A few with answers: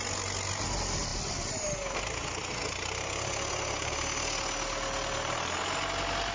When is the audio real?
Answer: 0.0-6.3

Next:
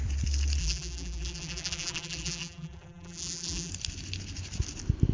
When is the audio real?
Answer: 0.0-0.6; 3.7-5.1

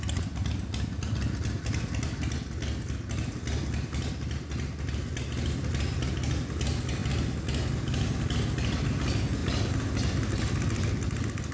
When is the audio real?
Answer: 0.0-11.5

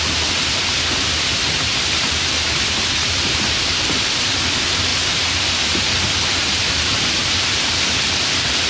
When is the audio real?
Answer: 0.0-1.7; 3.4-4.9; 7.7-8.7

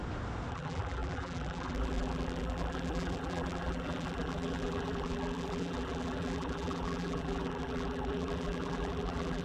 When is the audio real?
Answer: 0.0-0.5

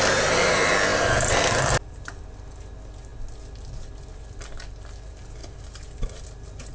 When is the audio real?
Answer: 0.0-6.7

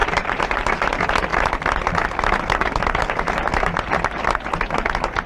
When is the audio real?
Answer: 0.6-5.3